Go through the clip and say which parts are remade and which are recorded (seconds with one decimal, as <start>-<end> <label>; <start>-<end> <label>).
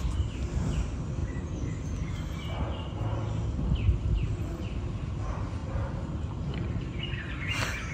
0.0-7.9 recorded